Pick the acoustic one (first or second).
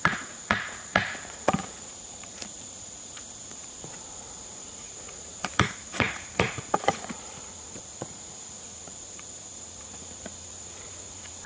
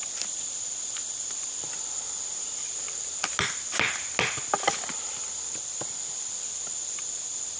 second